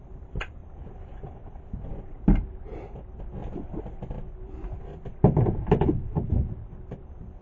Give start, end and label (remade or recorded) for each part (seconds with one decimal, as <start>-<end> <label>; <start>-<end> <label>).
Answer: 0.0-0.6 remade; 0.6-1.8 recorded; 1.8-2.7 remade; 2.7-3.6 recorded; 3.6-7.4 remade